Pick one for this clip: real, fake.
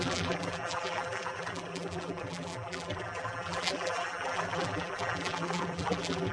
fake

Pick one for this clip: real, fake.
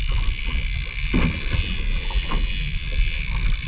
real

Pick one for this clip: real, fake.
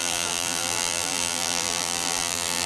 fake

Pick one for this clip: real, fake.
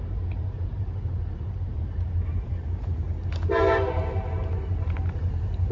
fake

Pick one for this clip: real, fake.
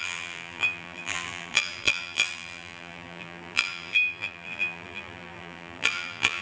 fake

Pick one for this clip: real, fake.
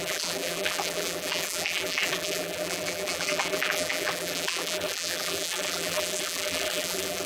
fake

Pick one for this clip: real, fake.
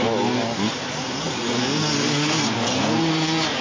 real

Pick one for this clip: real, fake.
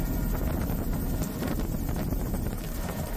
fake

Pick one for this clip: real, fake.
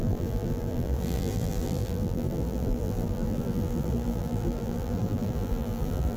fake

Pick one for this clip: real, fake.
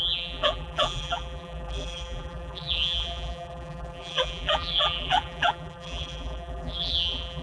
fake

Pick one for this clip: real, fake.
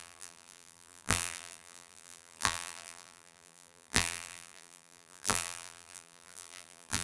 fake